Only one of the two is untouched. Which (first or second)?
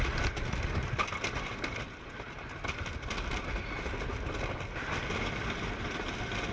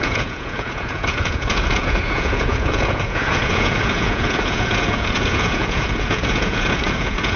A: first